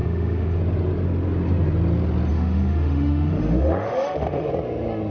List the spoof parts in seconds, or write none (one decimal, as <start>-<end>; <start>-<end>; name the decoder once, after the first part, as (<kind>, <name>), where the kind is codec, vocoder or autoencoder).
0.0-0.6 (autoencoder, DAC-VAE); 2.3-4.5